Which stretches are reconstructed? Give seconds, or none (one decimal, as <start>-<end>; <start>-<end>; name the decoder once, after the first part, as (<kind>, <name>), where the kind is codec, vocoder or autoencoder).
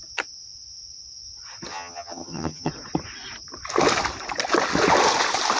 1.7-2.7 (vocoder, HiFi-GAN)